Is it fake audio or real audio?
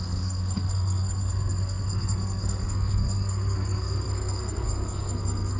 fake